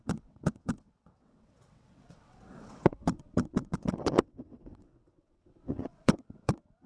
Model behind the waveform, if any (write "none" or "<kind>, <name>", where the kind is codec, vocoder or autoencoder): vocoder, WaveNeXt